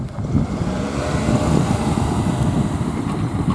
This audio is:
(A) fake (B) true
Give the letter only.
A